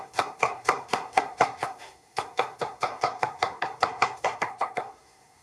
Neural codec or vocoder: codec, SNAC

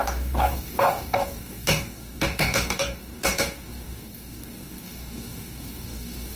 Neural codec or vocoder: codec, DAC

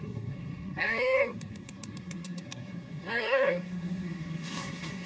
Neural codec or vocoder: codec, SNAC